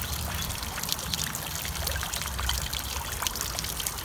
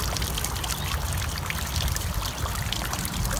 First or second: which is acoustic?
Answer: first